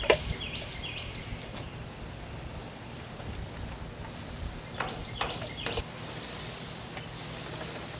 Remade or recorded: recorded